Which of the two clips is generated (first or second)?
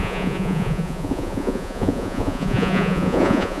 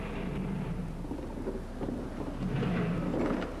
first